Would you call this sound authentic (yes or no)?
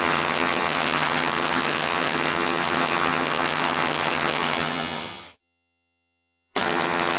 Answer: no